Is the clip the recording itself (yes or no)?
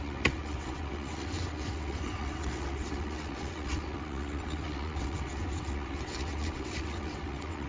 no